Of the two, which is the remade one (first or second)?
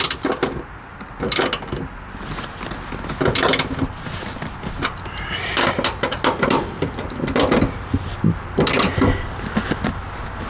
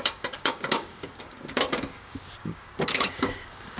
second